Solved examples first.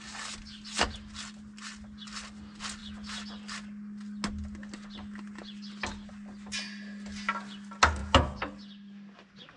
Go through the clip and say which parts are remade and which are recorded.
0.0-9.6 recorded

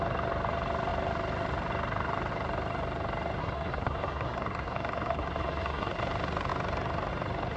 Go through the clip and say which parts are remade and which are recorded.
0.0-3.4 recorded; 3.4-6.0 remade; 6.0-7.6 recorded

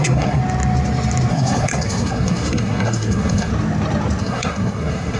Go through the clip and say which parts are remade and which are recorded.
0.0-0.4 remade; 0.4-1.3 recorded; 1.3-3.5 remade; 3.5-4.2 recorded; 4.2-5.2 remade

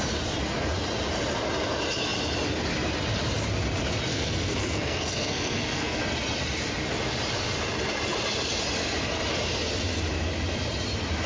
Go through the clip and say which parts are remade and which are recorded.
0.0-4.1 recorded; 4.1-6.0 remade; 6.0-11.3 recorded

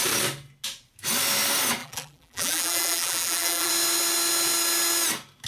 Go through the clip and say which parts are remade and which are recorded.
0.0-1.8 recorded; 1.8-3.7 remade; 3.7-5.5 recorded